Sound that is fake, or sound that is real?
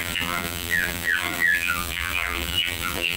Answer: fake